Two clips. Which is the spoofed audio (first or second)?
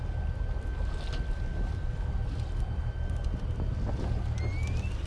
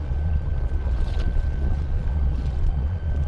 second